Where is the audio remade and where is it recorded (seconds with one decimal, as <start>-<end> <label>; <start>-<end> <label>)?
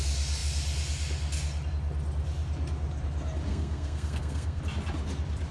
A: 0.0-3.5 recorded; 3.5-4.6 remade; 4.6-5.5 recorded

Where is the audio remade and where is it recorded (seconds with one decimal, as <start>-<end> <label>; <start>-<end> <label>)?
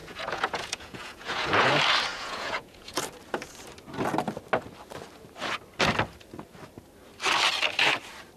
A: 0.0-1.7 remade; 1.7-2.1 recorded; 2.1-3.0 remade; 3.0-8.4 recorded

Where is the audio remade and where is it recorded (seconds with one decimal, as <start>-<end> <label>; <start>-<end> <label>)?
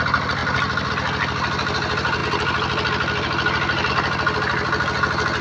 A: 0.0-5.4 recorded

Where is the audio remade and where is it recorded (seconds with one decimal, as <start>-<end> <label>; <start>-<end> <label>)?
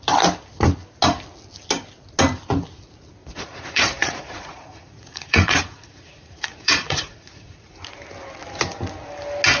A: 0.0-3.2 recorded; 3.2-7.8 remade; 7.8-9.6 recorded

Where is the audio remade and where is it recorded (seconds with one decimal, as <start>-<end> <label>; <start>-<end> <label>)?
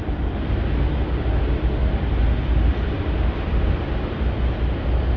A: 0.0-5.2 recorded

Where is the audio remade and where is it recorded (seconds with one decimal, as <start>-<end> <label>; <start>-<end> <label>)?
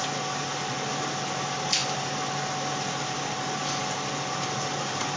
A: 0.0-5.2 recorded